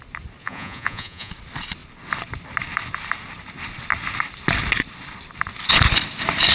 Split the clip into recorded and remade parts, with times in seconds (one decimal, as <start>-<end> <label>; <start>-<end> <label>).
0.0-0.4 recorded; 0.4-1.3 remade; 1.3-6.5 recorded